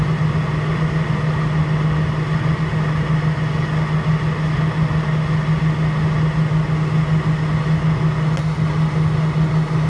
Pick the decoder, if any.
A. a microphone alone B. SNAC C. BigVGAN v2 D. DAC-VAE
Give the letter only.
A